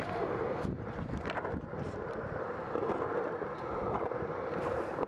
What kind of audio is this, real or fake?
fake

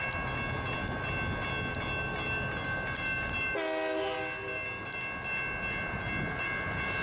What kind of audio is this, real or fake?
real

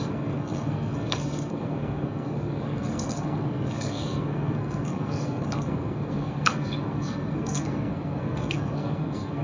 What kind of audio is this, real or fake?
fake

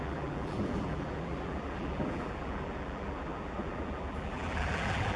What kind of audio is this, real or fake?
fake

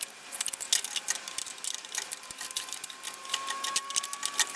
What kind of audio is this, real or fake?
real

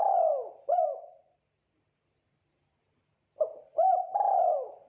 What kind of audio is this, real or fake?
fake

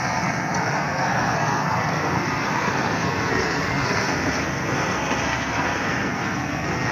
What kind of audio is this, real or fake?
fake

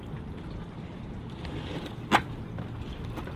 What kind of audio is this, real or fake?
real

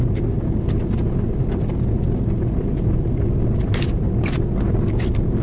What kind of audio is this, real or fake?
real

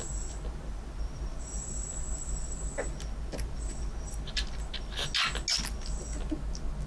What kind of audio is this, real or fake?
real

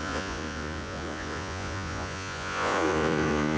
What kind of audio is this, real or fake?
fake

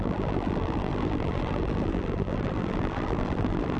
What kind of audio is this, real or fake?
fake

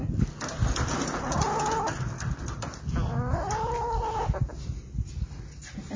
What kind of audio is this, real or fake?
real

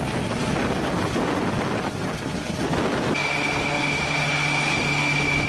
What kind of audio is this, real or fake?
real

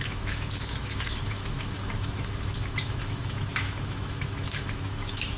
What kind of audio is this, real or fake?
fake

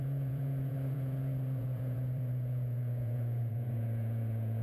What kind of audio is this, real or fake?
fake